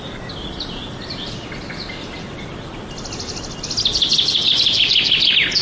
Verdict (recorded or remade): recorded